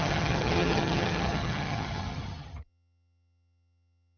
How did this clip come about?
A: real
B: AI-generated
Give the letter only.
B